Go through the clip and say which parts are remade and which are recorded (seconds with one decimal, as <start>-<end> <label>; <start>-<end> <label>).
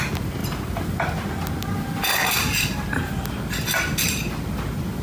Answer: 0.0-5.0 recorded